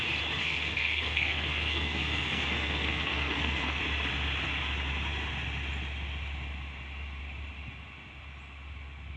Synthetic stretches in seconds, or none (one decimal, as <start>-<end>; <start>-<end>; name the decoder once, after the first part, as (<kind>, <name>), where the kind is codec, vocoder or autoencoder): 0.4-3.8 (codec, SNAC)